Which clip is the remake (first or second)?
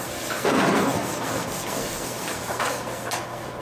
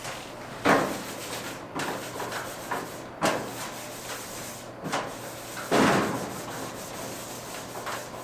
first